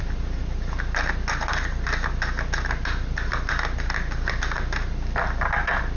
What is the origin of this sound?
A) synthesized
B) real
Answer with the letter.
B